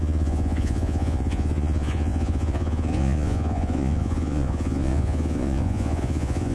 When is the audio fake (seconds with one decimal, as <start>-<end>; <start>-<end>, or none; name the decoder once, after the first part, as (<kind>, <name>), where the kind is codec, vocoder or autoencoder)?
0.0-6.5 (vocoder, Vocos)